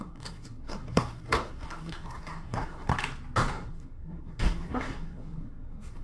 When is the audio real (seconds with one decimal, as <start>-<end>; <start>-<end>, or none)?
2.9-3.5